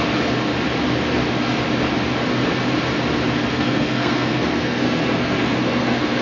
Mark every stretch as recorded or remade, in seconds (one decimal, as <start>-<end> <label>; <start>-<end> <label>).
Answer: 0.0-3.5 recorded; 3.5-6.2 remade